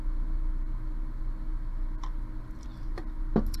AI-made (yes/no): no